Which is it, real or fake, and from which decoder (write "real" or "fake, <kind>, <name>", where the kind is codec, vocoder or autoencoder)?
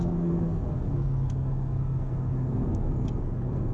fake, codec, SNAC